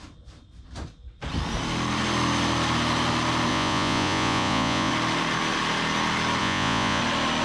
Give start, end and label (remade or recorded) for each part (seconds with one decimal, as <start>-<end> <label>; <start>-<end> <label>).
0.0-3.5 recorded; 3.5-4.9 remade; 4.9-6.4 recorded; 6.4-7.0 remade; 7.0-7.4 recorded